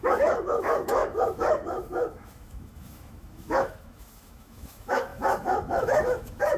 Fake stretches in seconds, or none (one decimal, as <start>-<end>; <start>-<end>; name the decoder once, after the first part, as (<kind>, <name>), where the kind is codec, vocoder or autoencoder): 0.0-6.6 (autoencoder, DAC-VAE)